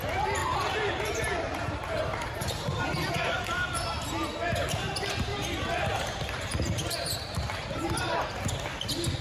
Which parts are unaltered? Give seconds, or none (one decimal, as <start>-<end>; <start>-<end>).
0.0-0.4; 3.1-5.3; 8.1-9.2